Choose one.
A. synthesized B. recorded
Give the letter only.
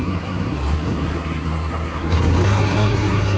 A